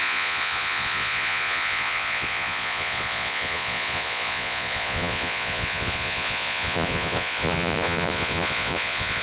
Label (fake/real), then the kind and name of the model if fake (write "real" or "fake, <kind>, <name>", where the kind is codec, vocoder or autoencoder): fake, vocoder, Vocos